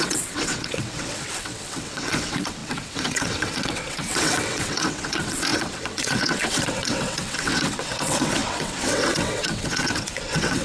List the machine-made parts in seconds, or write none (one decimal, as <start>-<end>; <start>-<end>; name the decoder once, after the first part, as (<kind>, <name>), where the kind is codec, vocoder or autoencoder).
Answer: 0.0-10.6 (vocoder, WaveNeXt)